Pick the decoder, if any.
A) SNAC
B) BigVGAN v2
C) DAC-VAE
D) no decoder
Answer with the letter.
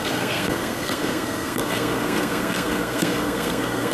A